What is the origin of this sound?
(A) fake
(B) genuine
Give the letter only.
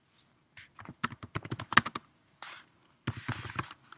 B